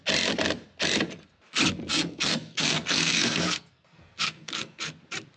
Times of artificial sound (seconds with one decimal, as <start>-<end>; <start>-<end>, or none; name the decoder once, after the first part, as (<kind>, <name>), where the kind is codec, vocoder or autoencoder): 1.9-5.0 (codec, SNAC)